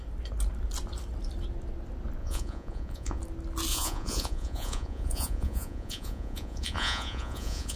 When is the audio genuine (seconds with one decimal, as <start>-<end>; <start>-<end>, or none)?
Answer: 0.0-2.2; 3.2-3.7